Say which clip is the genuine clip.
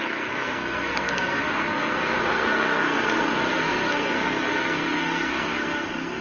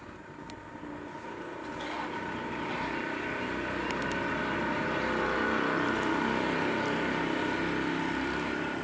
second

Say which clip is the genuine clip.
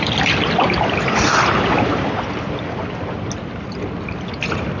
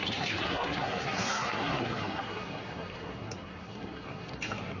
first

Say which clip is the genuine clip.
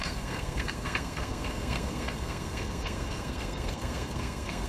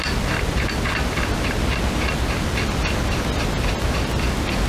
second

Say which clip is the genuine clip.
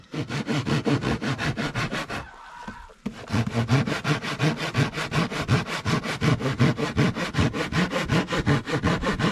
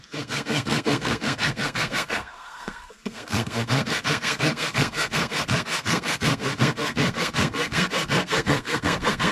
first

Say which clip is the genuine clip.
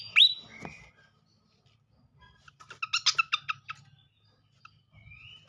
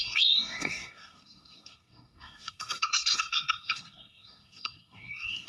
first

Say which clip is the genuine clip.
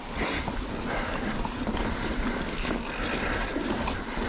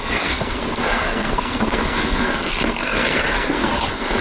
first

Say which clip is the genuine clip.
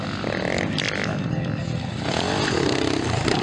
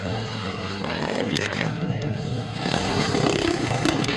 first